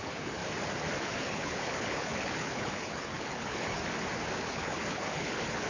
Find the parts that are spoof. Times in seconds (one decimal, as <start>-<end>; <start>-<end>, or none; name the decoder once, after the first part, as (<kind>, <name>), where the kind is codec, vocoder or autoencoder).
0.0-0.4 (codec, HILCodec); 1.0-3.8; 4.4-5.7